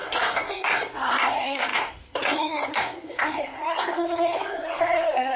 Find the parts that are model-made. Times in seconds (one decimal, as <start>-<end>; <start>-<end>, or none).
0.0-5.4